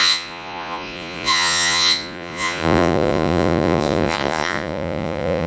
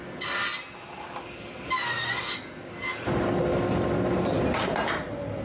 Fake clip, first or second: first